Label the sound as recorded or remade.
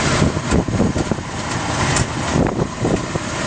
recorded